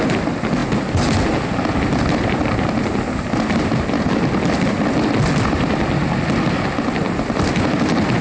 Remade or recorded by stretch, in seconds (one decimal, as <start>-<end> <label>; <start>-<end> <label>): 0.0-8.2 recorded